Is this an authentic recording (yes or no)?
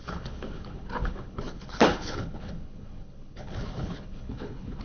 no